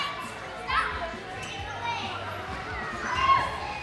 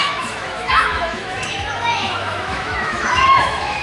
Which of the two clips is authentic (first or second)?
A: first